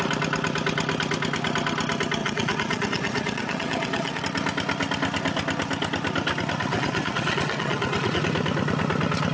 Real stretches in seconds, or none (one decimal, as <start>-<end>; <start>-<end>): 0.0-2.2; 4.2-6.7; 8.2-9.3